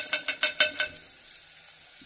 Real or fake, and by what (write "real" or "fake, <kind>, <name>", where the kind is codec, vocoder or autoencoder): real